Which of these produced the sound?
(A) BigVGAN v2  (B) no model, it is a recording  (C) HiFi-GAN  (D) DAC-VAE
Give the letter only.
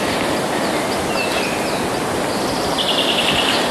A